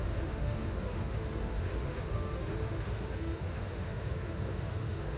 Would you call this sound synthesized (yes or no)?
yes